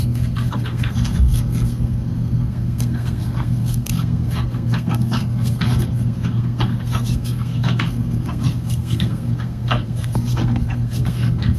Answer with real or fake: fake